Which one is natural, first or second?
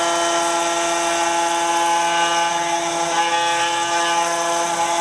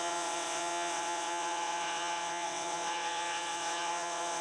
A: first